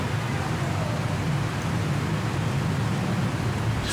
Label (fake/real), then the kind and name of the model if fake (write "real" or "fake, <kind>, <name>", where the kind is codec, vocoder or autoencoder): real